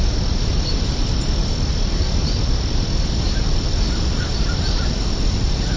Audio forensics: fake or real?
real